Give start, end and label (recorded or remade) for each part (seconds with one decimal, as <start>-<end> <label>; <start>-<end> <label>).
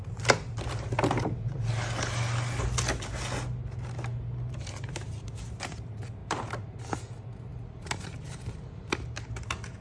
0.0-6.2 recorded; 6.2-6.8 remade; 6.8-7.5 recorded; 7.5-8.5 remade; 8.5-9.8 recorded